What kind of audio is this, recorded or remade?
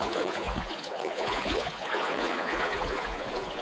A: remade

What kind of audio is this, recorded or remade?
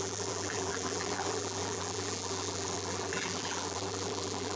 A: remade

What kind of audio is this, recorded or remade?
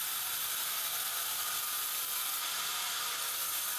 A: recorded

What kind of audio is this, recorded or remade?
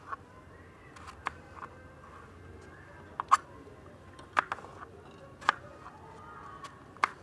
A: recorded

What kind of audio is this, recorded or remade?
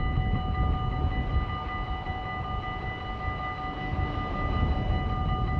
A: recorded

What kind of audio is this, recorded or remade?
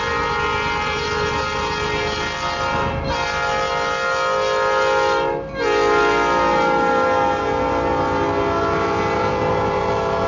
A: recorded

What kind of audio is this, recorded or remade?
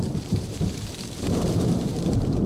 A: remade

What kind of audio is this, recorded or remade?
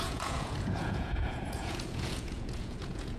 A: remade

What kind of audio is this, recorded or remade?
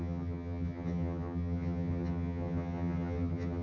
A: remade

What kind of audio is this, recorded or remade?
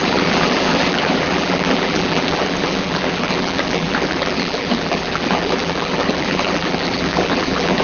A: remade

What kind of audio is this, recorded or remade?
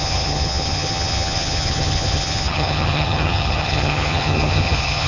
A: remade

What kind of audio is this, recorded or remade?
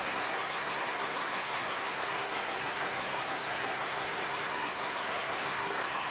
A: remade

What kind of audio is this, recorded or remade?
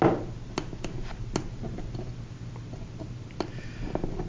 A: recorded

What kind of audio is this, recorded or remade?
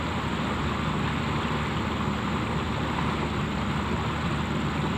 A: recorded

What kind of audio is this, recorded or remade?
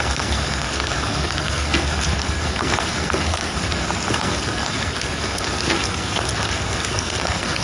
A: remade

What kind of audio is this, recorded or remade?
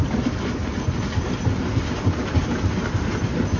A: recorded